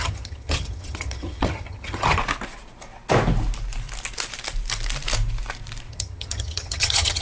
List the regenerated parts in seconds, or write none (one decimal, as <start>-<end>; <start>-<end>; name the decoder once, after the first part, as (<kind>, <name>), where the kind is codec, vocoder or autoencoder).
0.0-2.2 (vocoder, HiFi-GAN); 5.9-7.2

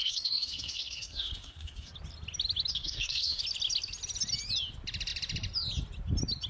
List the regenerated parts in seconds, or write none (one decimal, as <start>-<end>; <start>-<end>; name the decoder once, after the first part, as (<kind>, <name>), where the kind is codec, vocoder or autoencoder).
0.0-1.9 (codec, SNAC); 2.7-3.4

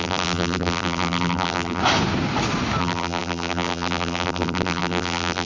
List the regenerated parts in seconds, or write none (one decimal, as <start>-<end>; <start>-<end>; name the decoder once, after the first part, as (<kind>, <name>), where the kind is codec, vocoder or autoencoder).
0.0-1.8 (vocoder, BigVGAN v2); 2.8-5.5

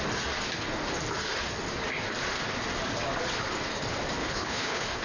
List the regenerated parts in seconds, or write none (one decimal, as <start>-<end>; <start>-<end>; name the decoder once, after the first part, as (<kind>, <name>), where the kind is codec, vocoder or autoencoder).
4.2-5.0 (codec, HILCodec)